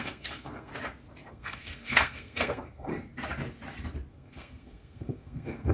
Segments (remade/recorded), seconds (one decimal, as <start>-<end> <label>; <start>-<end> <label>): 0.0-0.7 remade; 0.7-1.3 recorded; 1.3-2.9 remade; 2.9-4.1 recorded; 4.1-5.7 remade